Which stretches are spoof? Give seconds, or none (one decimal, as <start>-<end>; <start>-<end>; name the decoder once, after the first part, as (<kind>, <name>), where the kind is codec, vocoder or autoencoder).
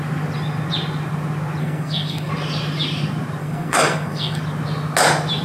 1.6-2.3 (codec, SNAC); 3.4-4.4